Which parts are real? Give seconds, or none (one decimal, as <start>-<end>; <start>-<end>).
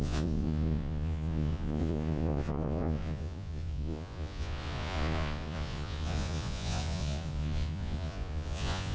none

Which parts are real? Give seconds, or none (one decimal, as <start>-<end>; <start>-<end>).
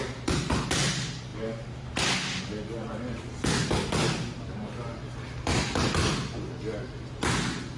0.0-7.8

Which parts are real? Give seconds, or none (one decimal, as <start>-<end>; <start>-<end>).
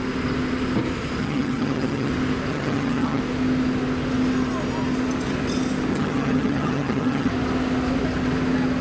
0.0-1.2; 2.1-2.5; 3.2-5.9; 7.3-8.8